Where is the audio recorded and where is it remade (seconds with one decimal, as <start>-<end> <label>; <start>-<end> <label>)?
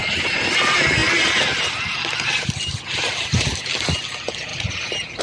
0.0-4.5 recorded; 4.5-5.2 remade